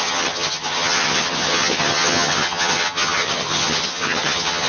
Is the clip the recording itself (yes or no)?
no